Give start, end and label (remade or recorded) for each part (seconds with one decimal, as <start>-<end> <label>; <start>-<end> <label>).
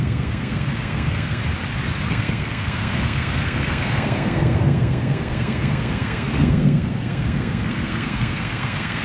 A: 0.0-1.4 remade; 1.4-2.1 recorded; 2.1-9.0 remade